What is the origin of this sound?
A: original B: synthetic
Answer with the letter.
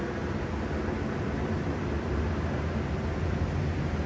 A